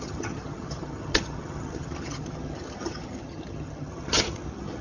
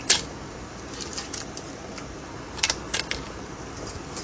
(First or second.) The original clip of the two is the second